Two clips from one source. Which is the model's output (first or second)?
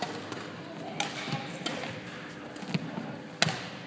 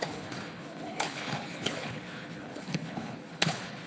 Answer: second